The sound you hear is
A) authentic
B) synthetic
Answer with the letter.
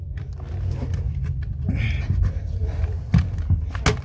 A